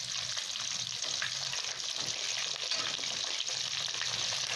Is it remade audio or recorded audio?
recorded